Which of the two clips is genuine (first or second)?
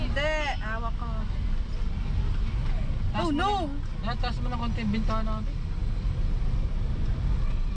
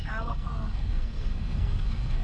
first